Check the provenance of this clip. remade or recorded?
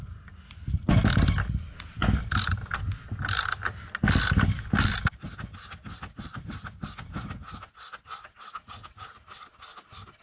recorded